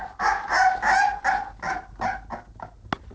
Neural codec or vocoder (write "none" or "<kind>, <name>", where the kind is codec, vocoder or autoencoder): none